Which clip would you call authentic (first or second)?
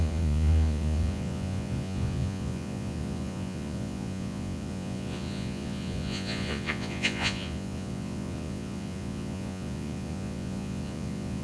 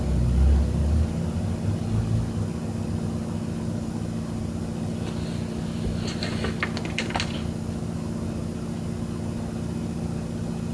second